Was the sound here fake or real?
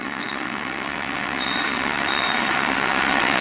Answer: fake